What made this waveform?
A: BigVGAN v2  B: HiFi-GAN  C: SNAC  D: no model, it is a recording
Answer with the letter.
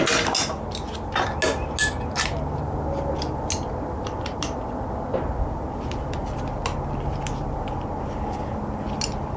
D